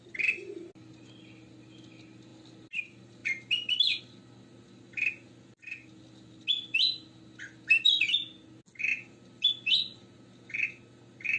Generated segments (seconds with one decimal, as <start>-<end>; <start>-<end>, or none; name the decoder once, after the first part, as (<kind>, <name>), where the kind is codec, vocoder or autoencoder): none